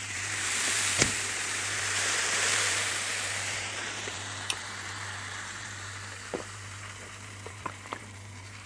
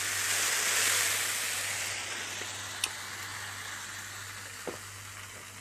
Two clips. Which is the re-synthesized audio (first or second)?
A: first